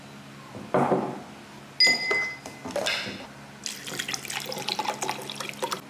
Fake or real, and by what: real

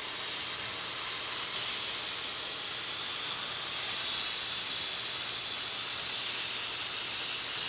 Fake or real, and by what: real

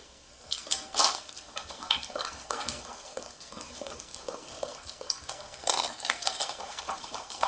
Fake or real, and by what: fake, codec, SNAC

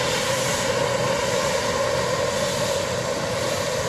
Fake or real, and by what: real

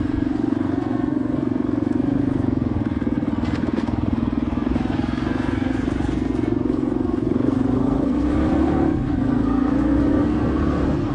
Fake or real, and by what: fake, codec, SNAC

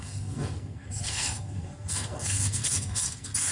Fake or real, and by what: fake, codec, SNAC